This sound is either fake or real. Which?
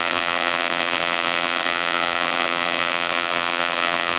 fake